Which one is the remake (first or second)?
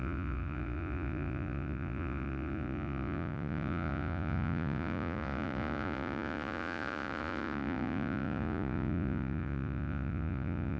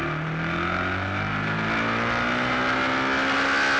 first